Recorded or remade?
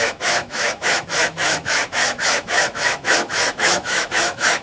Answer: remade